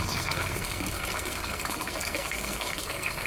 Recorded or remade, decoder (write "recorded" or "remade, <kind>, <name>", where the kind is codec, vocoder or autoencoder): remade, codec, SNAC